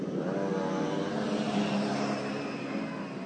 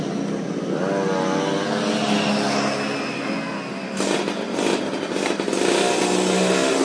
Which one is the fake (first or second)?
first